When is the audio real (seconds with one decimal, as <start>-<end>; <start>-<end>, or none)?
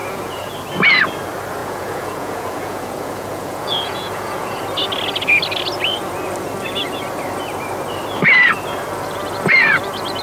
0.5-1.6; 4.6-10.2